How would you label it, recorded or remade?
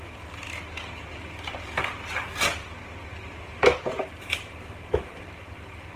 recorded